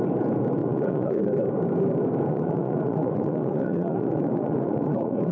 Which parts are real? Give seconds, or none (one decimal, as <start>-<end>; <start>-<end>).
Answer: 0.0-0.6; 1.2-2.3